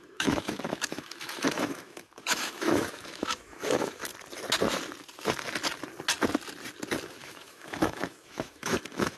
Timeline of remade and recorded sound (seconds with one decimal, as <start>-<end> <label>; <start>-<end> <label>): 0.0-4.1 remade; 4.1-7.0 recorded; 7.0-9.2 remade